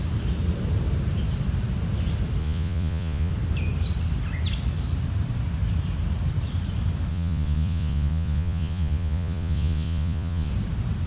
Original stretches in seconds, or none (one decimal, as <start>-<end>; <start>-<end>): 0.0-2.4; 3.3-7.1; 10.5-11.1